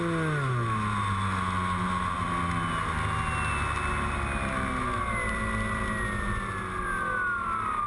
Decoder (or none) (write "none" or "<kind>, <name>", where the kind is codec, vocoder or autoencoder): none